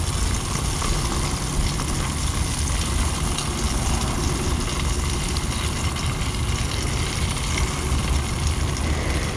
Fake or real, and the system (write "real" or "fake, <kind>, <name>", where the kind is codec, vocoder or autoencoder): real